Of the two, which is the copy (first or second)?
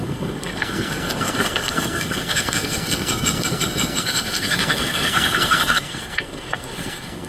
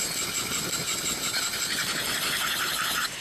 first